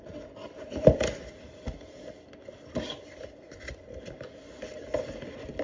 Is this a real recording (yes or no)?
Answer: yes